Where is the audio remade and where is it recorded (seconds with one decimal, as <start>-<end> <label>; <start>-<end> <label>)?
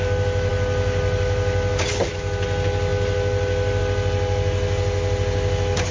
0.0-5.9 recorded